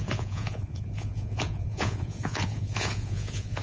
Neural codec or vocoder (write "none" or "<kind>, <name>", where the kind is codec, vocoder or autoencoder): vocoder, Vocos